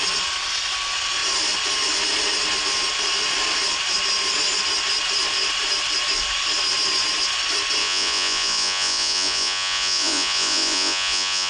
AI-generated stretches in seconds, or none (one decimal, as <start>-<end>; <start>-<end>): 7.8-11.5